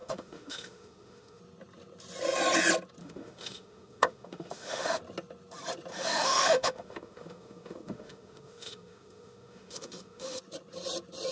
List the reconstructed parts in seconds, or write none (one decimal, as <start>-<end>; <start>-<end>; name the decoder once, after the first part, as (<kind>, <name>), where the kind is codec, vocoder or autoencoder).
0.0-1.4 (autoencoder, DAC-VAE); 3.0-5.0; 5.9-10.4